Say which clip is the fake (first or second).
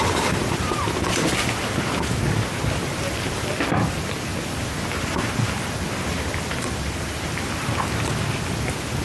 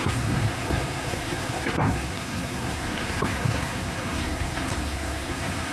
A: second